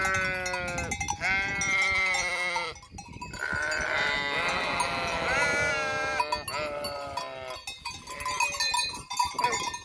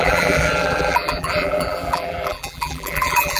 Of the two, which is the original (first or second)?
first